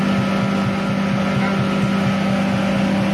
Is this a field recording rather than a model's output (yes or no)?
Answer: yes